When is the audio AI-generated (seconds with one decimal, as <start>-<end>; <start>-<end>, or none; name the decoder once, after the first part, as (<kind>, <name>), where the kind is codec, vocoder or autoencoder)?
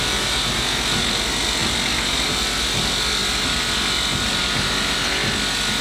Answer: none